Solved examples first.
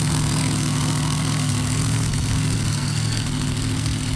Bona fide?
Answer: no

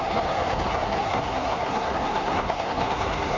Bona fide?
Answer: no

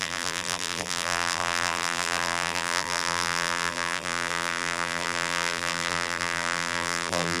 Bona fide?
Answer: no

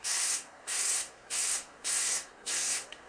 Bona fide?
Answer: no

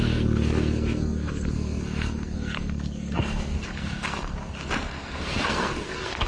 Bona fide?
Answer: no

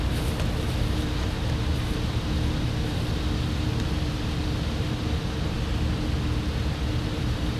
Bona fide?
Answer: yes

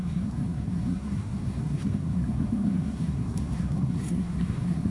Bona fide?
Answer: no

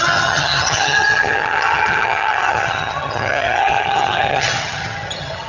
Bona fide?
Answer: no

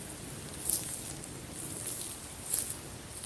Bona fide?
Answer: yes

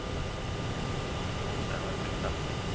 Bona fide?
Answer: yes